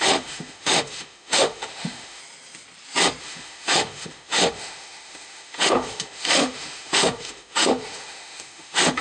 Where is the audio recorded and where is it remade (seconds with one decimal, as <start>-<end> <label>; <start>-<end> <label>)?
0.0-2.2 remade; 2.2-3.2 recorded; 3.2-9.0 remade